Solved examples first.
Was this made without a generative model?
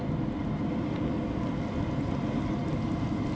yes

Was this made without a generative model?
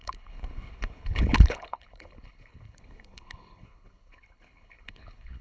no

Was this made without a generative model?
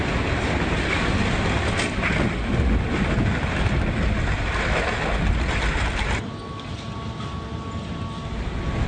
yes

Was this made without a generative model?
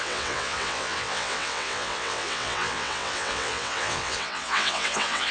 no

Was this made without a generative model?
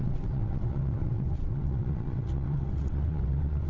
no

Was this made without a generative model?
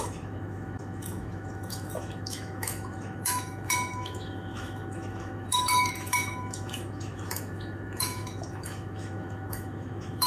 no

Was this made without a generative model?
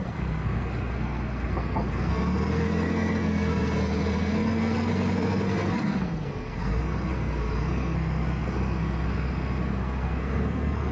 no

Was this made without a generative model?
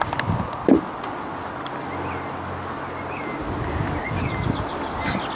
yes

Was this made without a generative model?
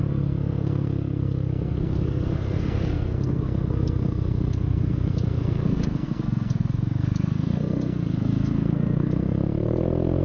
no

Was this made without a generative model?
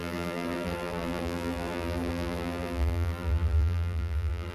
no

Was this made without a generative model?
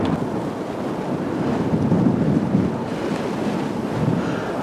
yes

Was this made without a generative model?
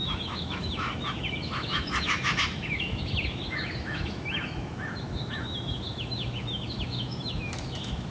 no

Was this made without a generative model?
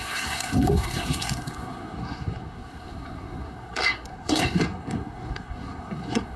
no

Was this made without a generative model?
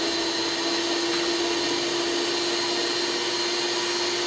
yes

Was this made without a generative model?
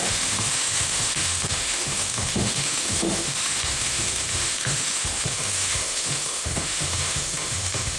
no